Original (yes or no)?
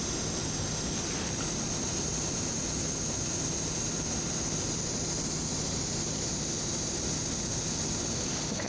yes